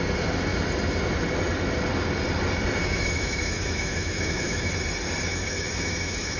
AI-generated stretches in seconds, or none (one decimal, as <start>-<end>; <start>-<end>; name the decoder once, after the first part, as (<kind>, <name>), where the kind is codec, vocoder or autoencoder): 2.8-4.7 (autoencoder, DAC-VAE); 5.3-6.4